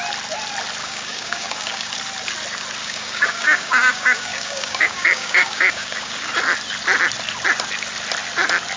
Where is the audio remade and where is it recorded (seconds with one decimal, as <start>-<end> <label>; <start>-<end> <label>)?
0.0-0.8 recorded; 0.8-1.9 remade; 1.9-2.8 recorded; 2.8-6.3 remade; 6.3-8.8 recorded